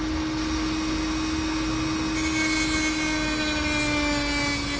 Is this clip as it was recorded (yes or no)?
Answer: yes